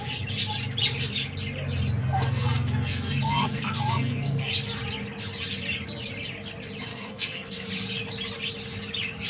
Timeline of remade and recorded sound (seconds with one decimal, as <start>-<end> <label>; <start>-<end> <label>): 0.0-2.0 recorded; 2.0-4.5 remade; 4.5-6.9 recorded; 6.9-7.7 remade; 7.7-9.3 recorded